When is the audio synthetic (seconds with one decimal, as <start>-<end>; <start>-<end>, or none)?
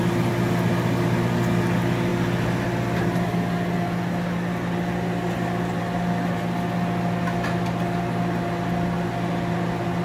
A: none